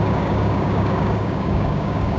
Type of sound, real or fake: fake